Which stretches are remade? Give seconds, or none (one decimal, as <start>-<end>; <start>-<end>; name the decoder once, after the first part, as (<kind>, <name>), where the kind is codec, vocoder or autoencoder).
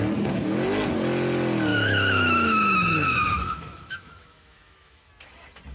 1.7-5.1 (autoencoder, DAC-VAE)